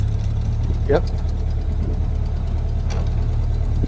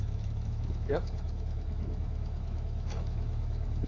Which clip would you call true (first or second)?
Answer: first